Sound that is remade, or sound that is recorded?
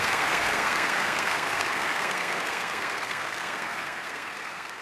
remade